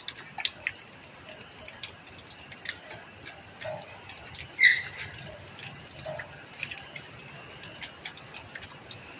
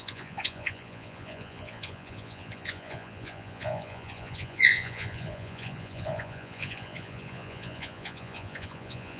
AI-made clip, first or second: second